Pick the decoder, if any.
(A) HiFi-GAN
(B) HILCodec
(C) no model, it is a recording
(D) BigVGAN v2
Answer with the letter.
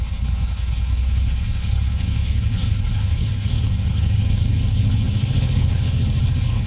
B